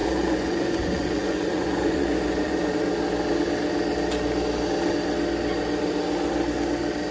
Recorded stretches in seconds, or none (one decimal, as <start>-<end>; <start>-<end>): 2.7-7.1

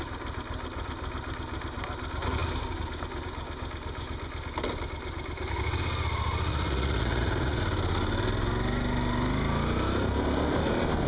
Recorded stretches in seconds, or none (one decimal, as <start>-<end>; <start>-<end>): 0.0-6.5; 7.6-11.1

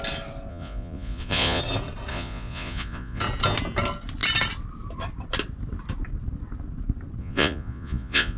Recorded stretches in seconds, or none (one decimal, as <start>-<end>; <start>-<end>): 0.0-0.5; 1.6-2.1; 3.2-7.2

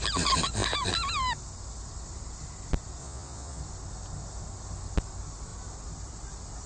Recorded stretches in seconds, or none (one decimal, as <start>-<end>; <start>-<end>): 0.0-3.0; 3.6-6.7

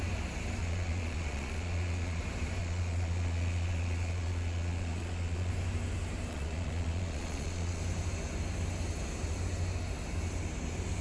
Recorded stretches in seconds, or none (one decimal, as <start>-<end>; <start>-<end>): 0.0-0.6; 2.2-2.6; 5.5-6.3; 7.8-11.0

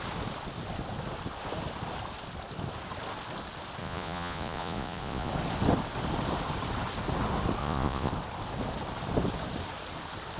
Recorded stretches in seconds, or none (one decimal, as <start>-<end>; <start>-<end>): 0.0-3.8; 5.3-7.6; 8.1-10.4

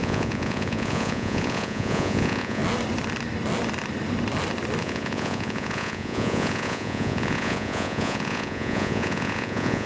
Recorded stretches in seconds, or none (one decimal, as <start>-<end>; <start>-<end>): 2.6-4.8